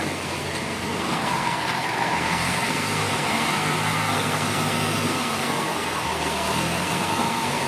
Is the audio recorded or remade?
remade